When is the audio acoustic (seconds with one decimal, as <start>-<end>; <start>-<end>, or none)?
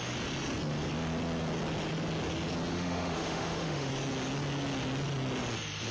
0.0-2.7; 3.9-5.9